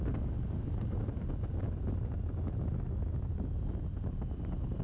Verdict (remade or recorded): recorded